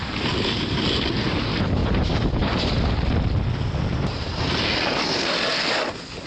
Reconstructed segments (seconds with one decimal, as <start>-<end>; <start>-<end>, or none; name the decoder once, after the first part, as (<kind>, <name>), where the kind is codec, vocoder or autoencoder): none